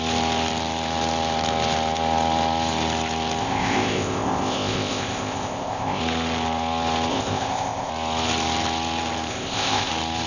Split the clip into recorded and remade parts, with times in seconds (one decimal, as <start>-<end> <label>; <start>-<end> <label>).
0.0-3.4 recorded; 3.4-6.0 remade; 6.0-7.1 recorded; 7.1-7.9 remade; 7.9-9.3 recorded; 9.3-9.9 remade; 9.9-10.3 recorded